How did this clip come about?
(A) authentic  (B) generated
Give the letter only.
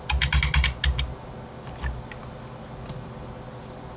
A